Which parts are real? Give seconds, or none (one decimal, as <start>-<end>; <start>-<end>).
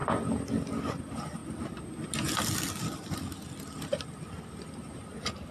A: 0.0-0.8; 1.4-2.6; 3.9-4.9